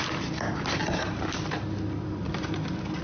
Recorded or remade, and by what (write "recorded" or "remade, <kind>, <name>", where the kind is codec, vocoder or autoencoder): recorded